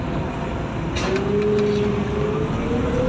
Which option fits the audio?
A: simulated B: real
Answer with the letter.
B